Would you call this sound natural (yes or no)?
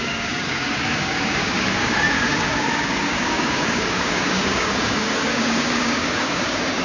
no